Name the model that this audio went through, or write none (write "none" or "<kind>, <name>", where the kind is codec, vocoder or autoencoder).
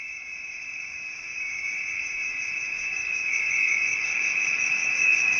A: autoencoder, DAC-VAE